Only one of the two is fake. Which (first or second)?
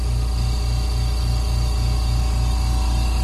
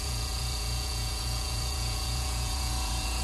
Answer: second